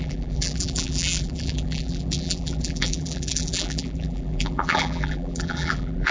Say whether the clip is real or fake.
fake